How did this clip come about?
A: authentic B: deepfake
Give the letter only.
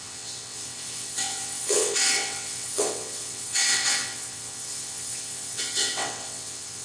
B